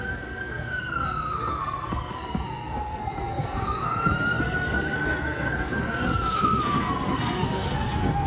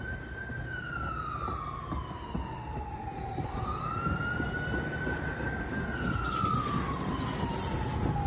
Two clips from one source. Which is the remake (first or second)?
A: first